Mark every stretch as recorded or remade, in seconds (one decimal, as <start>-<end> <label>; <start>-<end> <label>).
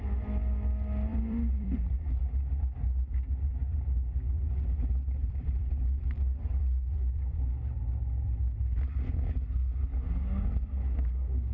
0.0-1.1 recorded; 1.1-2.2 remade; 2.2-3.7 recorded; 3.7-7.4 remade; 7.4-11.5 recorded